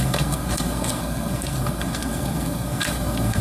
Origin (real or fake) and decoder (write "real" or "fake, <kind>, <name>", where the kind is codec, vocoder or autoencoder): fake, codec, SNAC